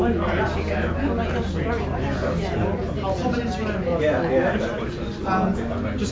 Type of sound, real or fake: real